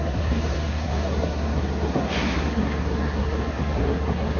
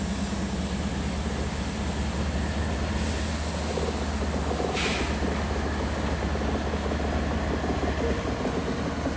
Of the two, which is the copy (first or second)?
first